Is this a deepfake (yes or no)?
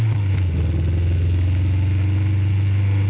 no